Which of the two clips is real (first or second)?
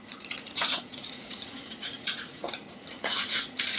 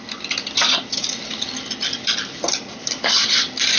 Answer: second